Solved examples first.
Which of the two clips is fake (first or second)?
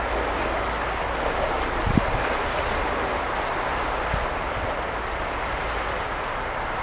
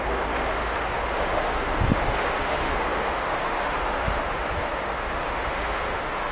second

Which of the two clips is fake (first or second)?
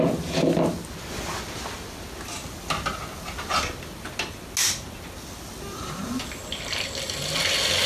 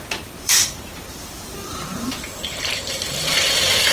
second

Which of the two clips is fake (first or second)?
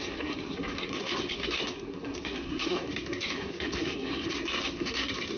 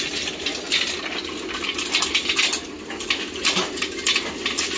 first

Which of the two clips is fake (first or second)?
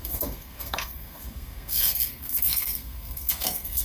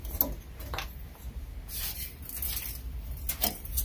first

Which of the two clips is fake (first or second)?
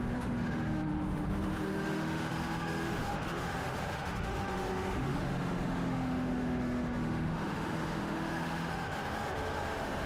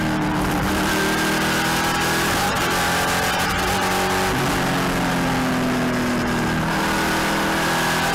first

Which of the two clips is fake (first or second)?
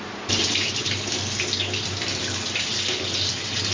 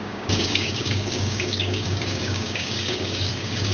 second